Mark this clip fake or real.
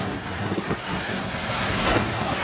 fake